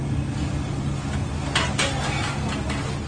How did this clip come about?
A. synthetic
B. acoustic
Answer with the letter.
B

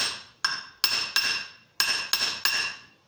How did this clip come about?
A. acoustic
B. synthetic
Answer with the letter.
A